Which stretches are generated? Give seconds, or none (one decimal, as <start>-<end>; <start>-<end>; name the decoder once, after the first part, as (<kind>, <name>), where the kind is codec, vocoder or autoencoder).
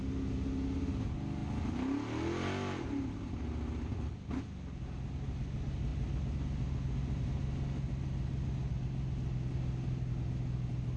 none